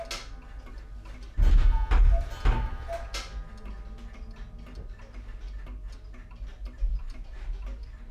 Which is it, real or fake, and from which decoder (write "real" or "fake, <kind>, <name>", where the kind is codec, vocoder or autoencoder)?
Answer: real